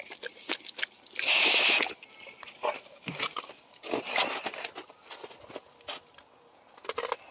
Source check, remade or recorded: recorded